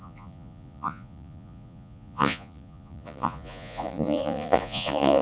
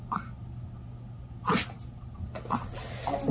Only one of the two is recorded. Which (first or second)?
second